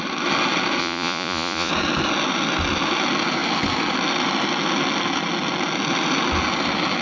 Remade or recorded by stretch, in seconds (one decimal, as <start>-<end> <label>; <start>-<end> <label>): 0.0-0.8 recorded; 0.8-1.7 remade; 1.7-7.0 recorded